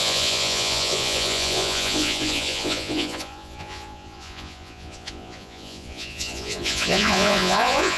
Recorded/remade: remade